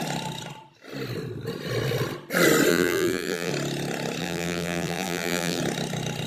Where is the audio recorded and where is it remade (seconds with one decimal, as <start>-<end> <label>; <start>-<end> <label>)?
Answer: 0.0-2.7 recorded; 2.7-3.5 remade; 3.5-4.2 recorded; 4.2-5.6 remade; 5.6-6.3 recorded

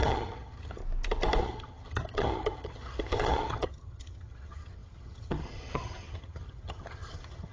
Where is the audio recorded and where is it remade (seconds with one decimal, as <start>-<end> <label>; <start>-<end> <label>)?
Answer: 0.0-0.8 remade; 0.8-1.4 recorded; 1.4-7.5 remade